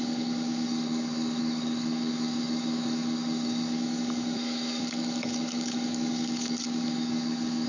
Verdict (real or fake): fake